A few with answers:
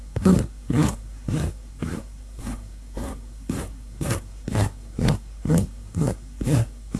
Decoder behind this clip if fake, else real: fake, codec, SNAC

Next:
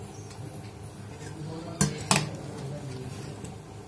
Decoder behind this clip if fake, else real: real